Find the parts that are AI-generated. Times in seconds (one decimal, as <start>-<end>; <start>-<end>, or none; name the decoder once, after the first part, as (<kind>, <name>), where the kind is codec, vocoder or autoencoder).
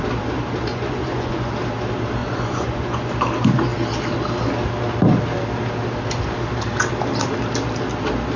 0.7-1.5 (vocoder, Vocos); 2.2-3.1